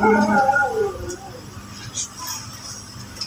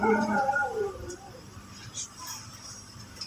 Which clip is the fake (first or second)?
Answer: second